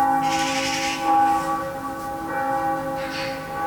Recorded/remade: recorded